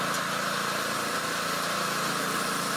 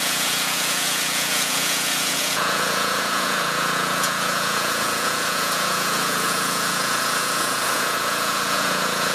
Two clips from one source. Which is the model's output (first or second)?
second